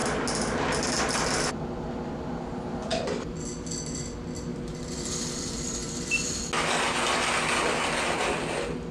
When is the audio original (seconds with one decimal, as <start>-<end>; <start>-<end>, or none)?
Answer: 0.0-2.9; 4.0-4.5; 6.4-8.9